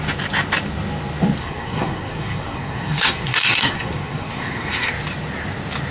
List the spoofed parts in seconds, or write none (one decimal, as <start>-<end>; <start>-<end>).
1.4-4.9

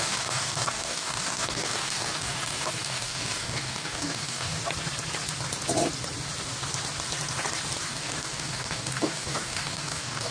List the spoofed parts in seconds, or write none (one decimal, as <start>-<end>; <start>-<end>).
0.0-4.6; 7.9-10.3

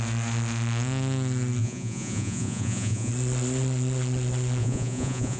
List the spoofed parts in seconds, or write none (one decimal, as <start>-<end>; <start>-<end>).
1.6-3.1; 4.6-5.4

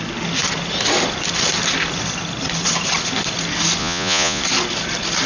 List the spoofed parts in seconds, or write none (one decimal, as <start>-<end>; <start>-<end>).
3.8-4.4